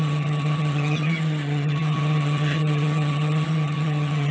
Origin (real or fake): fake